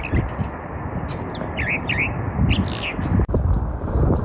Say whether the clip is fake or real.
real